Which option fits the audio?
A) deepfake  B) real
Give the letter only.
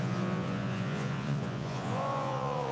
A